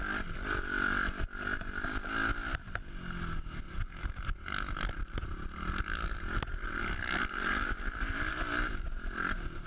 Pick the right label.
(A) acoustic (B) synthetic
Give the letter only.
A